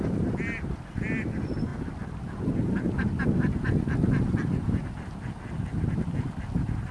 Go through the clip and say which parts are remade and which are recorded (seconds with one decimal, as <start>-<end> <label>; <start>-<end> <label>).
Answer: 0.0-6.9 recorded